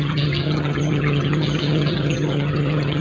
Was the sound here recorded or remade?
remade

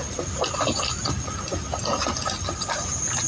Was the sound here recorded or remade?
recorded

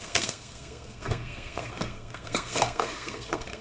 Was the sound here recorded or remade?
remade